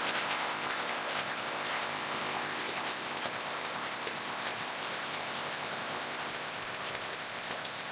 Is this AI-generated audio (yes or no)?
yes